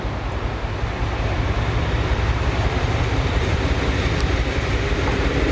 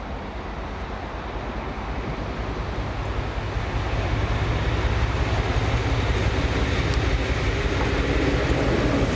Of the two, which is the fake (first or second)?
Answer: first